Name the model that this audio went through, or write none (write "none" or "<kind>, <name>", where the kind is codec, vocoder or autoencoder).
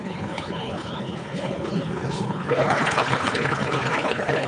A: codec, HILCodec